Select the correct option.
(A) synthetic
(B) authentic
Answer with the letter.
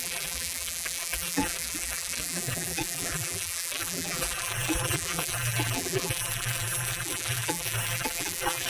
A